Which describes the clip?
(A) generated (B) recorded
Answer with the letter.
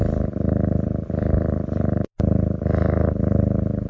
B